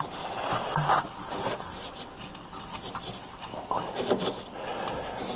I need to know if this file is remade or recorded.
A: recorded